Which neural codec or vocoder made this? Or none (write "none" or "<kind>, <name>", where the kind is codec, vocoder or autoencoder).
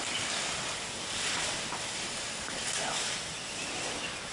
none